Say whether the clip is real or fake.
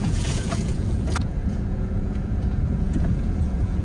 fake